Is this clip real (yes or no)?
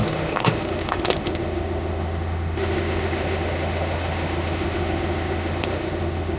no